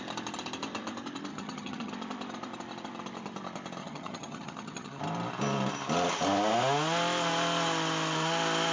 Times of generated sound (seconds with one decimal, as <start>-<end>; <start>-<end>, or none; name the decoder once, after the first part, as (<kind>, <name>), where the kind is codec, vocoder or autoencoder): 1.3-1.9 (vocoder, HiFi-GAN); 3.8-5.0